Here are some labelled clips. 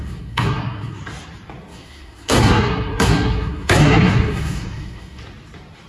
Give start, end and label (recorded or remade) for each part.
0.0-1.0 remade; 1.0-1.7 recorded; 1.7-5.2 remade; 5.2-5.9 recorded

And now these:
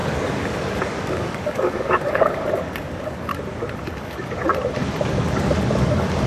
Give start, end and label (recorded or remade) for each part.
0.0-3.3 remade; 3.3-3.9 recorded; 3.9-4.5 remade; 4.5-5.1 recorded; 5.1-6.3 remade